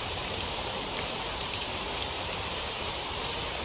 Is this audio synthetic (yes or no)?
yes